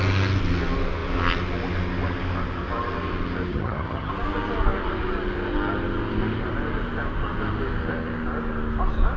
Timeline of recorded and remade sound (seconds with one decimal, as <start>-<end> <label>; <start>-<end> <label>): 0.0-3.5 recorded; 3.5-4.1 remade; 4.1-9.2 recorded